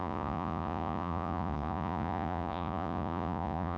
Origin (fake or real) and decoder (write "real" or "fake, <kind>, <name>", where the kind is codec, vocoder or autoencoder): fake, vocoder, Vocos